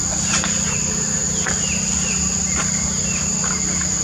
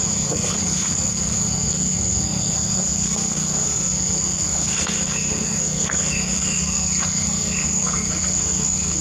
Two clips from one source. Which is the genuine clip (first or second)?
first